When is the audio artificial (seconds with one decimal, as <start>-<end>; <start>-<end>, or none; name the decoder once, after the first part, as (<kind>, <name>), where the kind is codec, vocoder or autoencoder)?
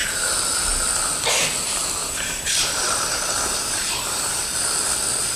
2.0-4.4 (vocoder, BigVGAN v2)